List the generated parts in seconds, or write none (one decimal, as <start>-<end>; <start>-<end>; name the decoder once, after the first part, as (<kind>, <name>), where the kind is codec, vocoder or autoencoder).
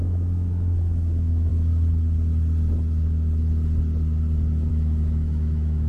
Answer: 0.0-1.5 (autoencoder, DAC-VAE); 4.7-5.9